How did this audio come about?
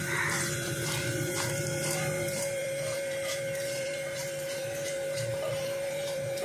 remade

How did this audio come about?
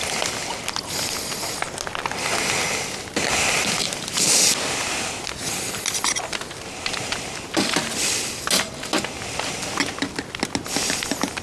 recorded